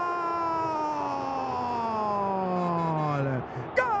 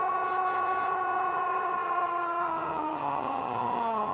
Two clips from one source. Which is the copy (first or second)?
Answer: second